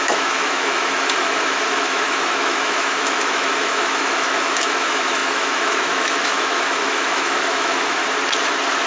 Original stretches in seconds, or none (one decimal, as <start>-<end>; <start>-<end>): 8.0-8.9